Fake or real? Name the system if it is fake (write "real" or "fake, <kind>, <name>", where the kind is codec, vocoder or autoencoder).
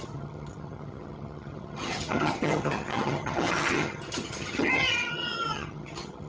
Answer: fake, vocoder, HiFi-GAN